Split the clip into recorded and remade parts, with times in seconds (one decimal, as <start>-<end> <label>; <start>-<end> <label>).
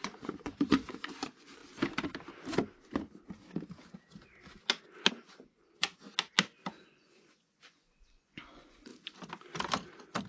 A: 0.0-1.6 remade; 1.6-5.1 recorded; 5.1-6.0 remade; 6.0-6.8 recorded; 6.8-8.9 remade; 8.9-10.3 recorded